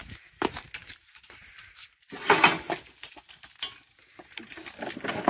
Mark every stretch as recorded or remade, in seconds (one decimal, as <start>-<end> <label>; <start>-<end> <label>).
0.0-0.8 recorded; 0.8-2.0 remade; 2.0-5.3 recorded